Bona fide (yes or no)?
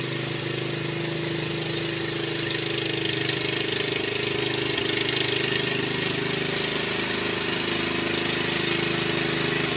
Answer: yes